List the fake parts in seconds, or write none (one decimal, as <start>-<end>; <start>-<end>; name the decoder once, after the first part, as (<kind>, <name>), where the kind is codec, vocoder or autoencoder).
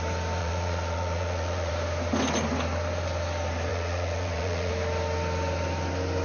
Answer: 0.4-1.7 (vocoder, Vocos); 3.7-4.7